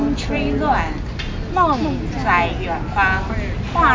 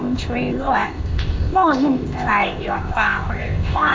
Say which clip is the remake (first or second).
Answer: second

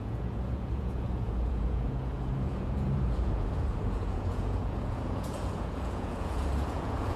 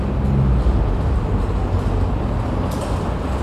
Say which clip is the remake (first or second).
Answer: first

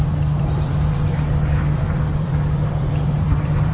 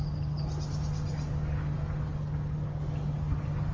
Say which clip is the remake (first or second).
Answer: first